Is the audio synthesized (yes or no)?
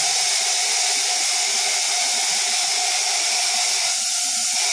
no